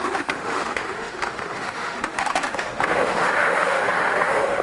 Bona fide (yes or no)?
no